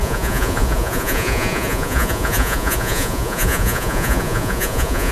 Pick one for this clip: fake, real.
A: fake